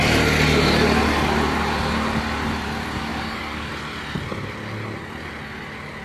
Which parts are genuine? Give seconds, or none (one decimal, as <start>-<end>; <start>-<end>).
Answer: 0.0-3.1; 3.7-6.0